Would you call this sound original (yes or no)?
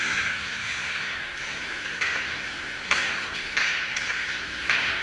no